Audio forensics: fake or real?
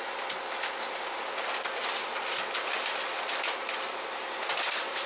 real